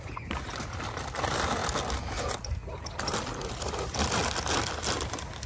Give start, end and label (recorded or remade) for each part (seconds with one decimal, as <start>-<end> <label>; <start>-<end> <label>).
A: 0.0-5.5 recorded